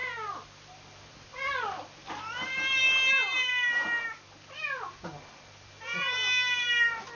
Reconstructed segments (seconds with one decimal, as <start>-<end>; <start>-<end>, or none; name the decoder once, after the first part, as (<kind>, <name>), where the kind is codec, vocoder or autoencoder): none